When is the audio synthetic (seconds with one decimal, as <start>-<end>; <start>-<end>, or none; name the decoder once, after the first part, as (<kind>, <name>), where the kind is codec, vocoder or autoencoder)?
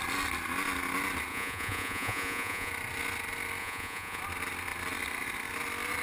1.3-2.7 (vocoder, Vocos); 3.6-4.2